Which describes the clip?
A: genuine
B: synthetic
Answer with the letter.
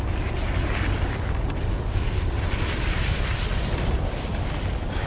A